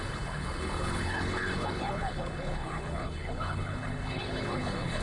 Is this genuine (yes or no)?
no